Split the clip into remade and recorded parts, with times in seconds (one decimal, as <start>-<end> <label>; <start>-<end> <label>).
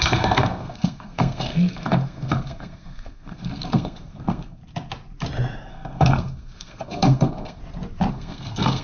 0.0-4.6 remade; 4.6-5.7 recorded; 5.7-7.6 remade; 7.6-8.1 recorded; 8.1-8.8 remade